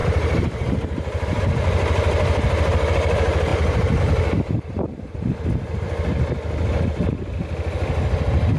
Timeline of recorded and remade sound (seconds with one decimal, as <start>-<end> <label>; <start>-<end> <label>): 0.0-1.4 remade; 1.4-3.5 recorded; 3.5-4.0 remade; 4.0-8.6 recorded